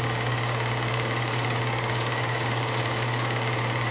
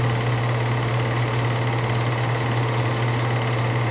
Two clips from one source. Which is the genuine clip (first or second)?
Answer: second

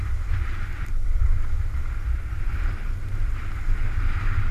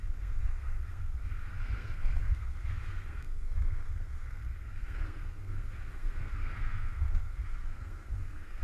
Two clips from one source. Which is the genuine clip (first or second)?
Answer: first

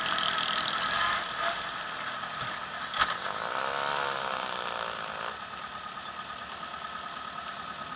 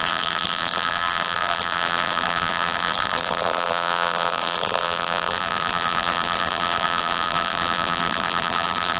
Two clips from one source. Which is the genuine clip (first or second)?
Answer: first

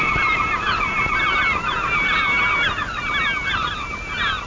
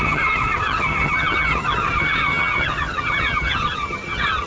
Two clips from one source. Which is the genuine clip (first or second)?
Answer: first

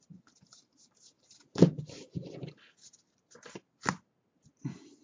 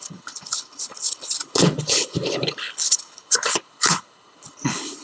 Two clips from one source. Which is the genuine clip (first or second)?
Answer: first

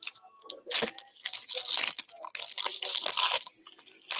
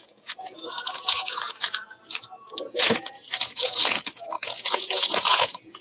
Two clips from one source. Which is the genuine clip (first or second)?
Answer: first